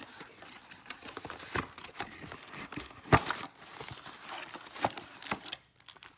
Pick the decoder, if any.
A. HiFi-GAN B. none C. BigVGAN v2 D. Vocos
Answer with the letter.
B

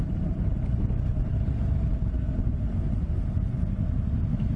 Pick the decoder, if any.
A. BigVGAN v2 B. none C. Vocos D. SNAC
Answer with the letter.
B